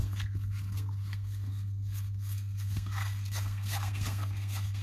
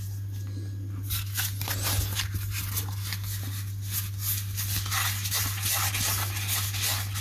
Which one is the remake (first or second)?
first